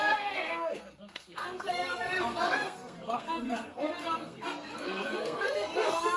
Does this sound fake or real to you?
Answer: fake